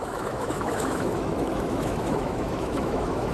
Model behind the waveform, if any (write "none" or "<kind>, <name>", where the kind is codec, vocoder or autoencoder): autoencoder, DAC-VAE